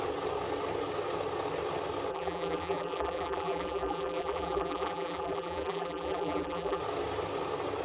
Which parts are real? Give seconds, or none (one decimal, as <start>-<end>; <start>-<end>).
0.0-2.1; 6.8-7.8